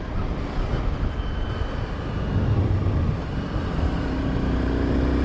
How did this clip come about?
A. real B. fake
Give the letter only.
A